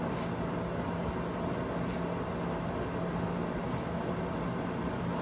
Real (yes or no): yes